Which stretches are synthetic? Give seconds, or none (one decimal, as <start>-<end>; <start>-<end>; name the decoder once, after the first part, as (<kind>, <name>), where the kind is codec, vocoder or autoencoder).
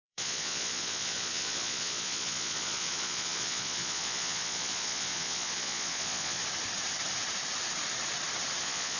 0.0-6.4 (vocoder, Vocos); 8.6-9.0